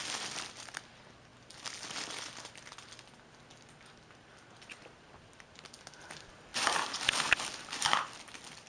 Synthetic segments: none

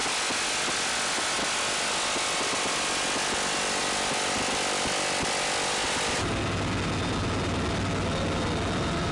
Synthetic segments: none

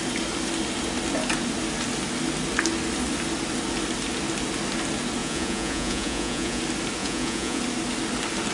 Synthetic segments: 5.2-6.6; 7.0-7.6